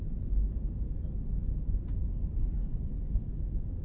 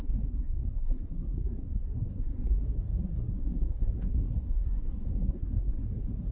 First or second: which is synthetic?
second